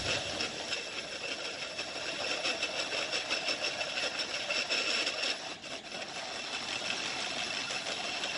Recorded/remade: recorded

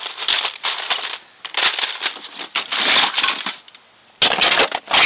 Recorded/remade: recorded